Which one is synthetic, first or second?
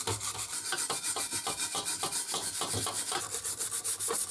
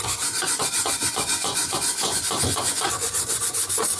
second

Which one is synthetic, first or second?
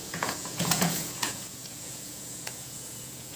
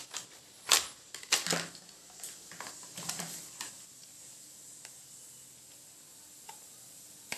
first